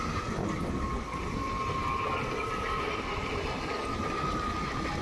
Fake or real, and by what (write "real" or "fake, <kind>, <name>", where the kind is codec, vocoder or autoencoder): real